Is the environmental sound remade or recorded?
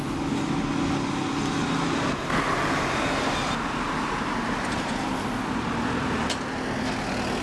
recorded